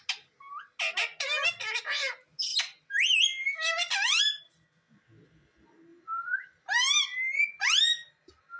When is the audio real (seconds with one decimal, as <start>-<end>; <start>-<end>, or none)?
0.0-5.9; 7.0-8.6